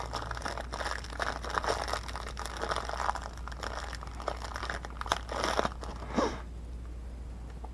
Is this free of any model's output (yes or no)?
yes